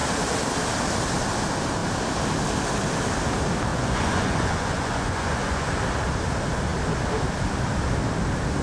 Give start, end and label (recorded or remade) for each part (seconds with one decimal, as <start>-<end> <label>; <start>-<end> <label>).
0.0-3.7 recorded; 3.7-5.8 remade; 5.8-8.6 recorded